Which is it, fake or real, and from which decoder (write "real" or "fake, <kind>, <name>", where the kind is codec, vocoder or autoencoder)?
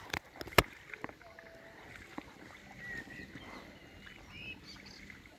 real